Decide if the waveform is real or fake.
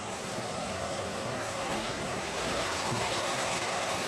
fake